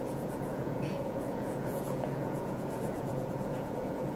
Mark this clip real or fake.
fake